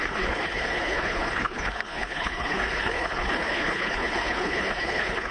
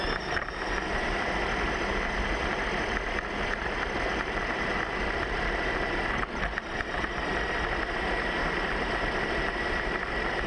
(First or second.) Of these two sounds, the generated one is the first